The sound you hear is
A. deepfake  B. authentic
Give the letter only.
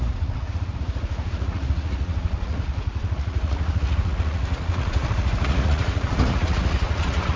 A